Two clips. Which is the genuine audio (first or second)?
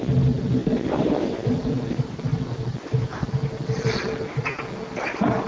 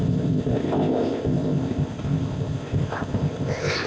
first